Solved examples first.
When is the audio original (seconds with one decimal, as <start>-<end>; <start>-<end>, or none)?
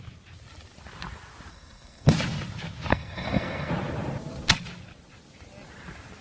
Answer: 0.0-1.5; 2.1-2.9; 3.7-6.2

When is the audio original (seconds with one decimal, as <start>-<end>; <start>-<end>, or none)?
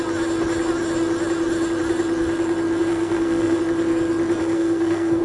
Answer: 0.0-2.9; 3.6-4.4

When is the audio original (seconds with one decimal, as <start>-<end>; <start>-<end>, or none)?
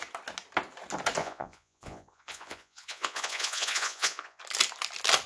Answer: 0.0-1.2; 4.4-5.3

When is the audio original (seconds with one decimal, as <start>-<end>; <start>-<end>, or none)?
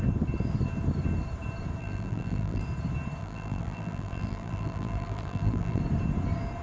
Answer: 0.0-1.8; 2.6-3.2; 5.8-6.6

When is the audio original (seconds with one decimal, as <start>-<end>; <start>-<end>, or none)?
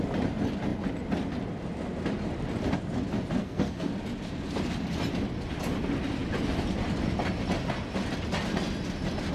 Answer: 0.0-3.4; 3.9-9.3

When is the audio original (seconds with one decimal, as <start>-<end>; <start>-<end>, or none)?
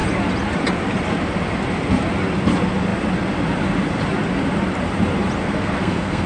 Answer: 0.0-5.4